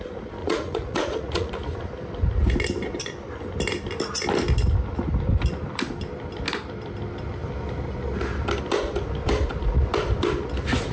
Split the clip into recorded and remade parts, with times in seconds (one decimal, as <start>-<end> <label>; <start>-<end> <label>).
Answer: 0.0-0.4 recorded; 0.4-1.5 remade; 1.5-10.9 recorded